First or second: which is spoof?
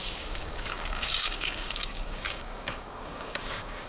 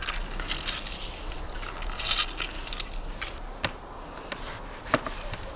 first